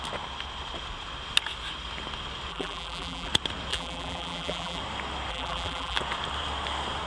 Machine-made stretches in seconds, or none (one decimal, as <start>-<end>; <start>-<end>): 2.5-3.3; 3.7-4.8; 5.3-6.0